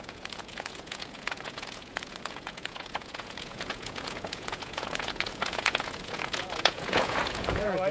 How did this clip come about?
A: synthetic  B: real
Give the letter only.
A